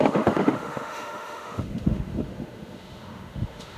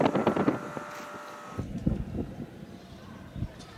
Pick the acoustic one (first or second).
second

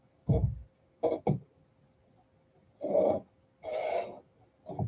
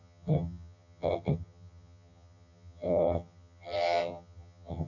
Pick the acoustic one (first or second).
first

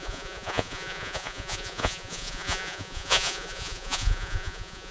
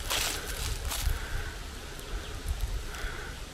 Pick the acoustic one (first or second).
second